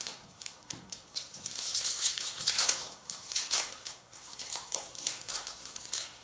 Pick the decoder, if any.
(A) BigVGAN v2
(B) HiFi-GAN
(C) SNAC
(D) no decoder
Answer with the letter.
C